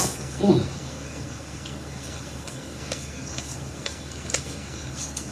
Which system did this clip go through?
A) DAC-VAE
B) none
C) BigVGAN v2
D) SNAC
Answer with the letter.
D